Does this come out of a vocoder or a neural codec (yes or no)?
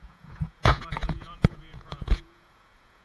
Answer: yes